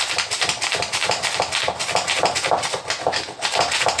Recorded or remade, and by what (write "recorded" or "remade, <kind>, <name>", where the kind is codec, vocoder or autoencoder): recorded